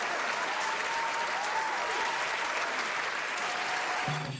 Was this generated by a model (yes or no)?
no